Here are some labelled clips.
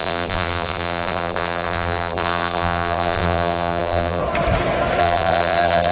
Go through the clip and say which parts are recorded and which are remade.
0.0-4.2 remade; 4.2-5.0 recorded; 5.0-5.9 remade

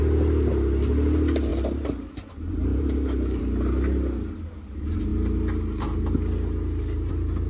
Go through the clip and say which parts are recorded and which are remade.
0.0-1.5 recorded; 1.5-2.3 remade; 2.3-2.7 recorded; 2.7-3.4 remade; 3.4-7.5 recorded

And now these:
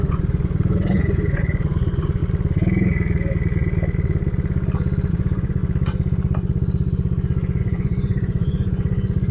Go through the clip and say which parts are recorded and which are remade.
0.0-2.2 remade; 2.2-5.1 recorded; 5.1-5.6 remade; 5.6-7.6 recorded; 7.6-9.3 remade